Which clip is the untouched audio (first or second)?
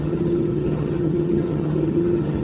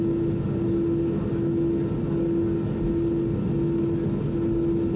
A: second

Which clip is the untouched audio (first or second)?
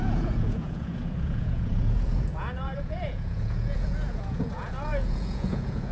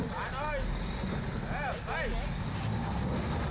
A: second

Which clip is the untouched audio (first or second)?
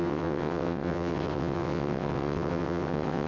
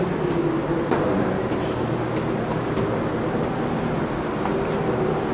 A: second